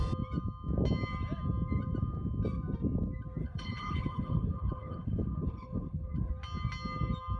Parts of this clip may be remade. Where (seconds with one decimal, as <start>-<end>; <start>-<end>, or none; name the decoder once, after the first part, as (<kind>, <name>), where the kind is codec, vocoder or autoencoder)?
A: 3.4-6.3 (codec, HILCodec)